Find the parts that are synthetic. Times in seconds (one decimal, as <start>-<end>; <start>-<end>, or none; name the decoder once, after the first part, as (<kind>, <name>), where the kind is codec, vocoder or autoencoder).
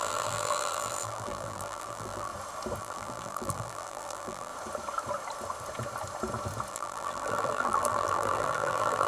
0.0-2.3 (vocoder, BigVGAN v2); 2.8-4.5; 6.7-9.1